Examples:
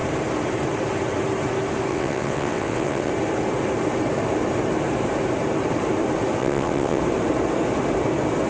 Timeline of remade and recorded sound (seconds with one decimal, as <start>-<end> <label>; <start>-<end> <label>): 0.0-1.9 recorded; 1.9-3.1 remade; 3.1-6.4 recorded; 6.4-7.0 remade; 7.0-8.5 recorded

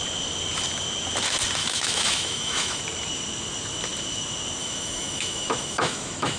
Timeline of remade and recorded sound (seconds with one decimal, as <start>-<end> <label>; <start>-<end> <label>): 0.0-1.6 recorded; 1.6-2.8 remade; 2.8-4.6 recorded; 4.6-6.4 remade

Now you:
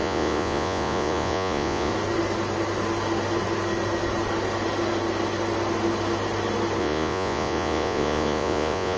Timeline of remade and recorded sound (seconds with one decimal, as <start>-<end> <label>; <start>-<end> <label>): 0.0-1.9 remade; 1.9-6.8 recorded; 6.8-9.0 remade

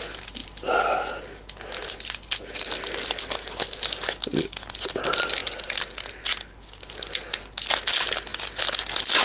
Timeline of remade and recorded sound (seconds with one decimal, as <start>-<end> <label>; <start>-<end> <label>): 0.0-0.4 recorded; 0.4-0.9 remade; 0.9-1.8 recorded; 1.8-3.1 remade; 3.1-5.4 recorded; 5.4-7.4 remade; 7.4-9.2 recorded

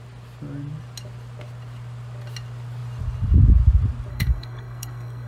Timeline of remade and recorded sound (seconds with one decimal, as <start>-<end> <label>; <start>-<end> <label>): 0.0-4.1 recorded; 4.1-5.3 remade

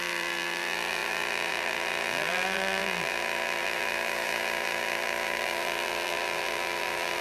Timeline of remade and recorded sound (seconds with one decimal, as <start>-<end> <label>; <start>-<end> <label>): 0.0-7.2 remade

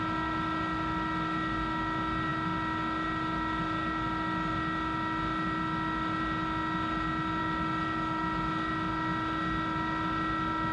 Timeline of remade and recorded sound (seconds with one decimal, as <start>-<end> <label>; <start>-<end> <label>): 0.0-10.7 recorded